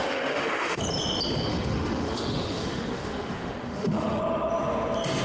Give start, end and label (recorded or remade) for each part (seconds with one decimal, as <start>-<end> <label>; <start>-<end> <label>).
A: 0.0-0.8 remade; 0.8-1.5 recorded; 1.5-4.2 remade; 4.2-5.2 recorded